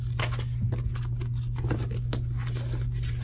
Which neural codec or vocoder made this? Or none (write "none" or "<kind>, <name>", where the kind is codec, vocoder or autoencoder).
none